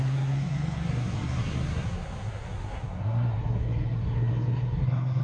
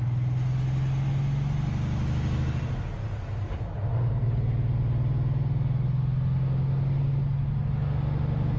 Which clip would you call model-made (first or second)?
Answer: first